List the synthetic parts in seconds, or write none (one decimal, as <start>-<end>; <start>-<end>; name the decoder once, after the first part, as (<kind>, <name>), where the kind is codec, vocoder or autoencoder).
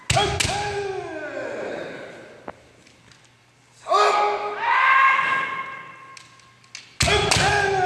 none